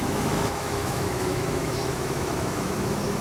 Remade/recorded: remade